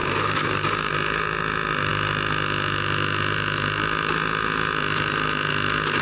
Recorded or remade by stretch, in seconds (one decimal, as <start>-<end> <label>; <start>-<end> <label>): 0.0-0.9 remade; 0.9-6.0 recorded